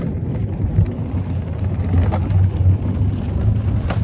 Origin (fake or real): real